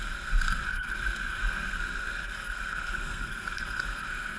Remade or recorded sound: remade